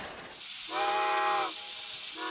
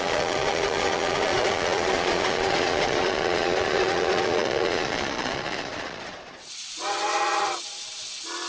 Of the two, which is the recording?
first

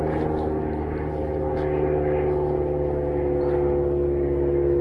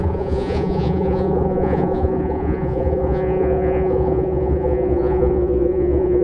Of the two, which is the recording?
first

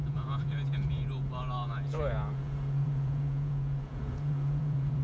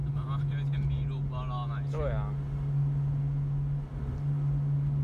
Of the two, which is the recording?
second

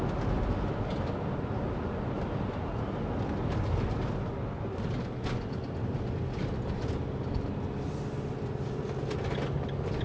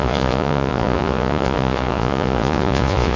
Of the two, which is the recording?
first